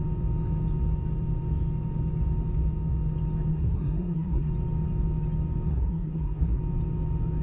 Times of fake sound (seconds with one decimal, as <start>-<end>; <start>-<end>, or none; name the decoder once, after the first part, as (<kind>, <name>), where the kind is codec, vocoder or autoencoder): 3.5-4.5 (codec, SNAC); 5.7-6.6